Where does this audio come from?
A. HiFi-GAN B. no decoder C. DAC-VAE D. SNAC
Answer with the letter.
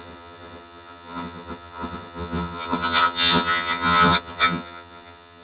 A